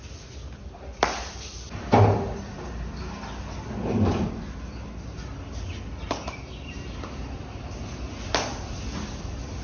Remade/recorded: recorded